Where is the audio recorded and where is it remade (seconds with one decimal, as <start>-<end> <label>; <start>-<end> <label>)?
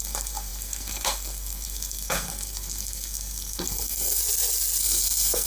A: 0.0-4.2 remade; 4.2-4.8 recorded; 4.8-5.5 remade